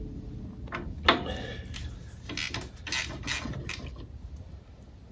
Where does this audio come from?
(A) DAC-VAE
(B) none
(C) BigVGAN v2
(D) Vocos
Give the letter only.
B